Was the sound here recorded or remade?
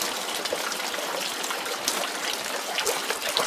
recorded